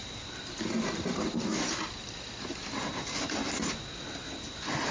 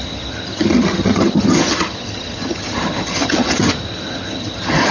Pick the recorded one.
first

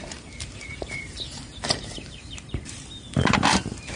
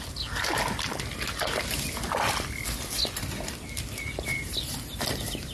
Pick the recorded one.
second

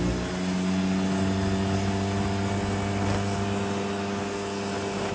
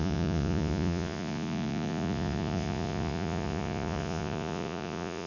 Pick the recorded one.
first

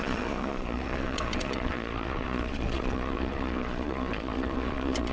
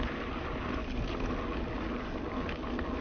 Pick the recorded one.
second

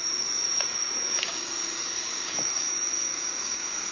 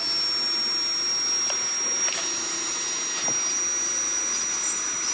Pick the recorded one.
second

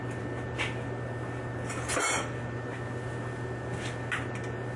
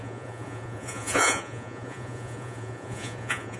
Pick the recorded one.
first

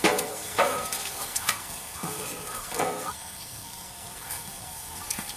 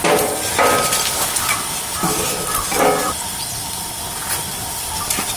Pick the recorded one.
second